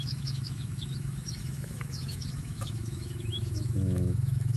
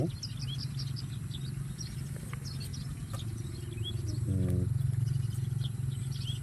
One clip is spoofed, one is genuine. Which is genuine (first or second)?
second